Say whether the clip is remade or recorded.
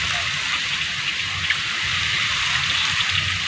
recorded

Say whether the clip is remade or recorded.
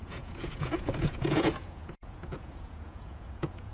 remade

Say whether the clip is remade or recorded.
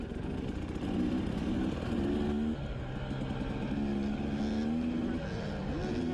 recorded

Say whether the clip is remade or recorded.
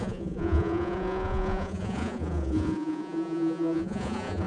remade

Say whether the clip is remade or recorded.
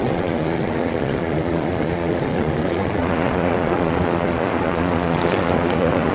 remade